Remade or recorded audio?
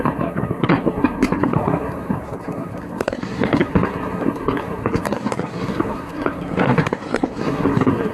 remade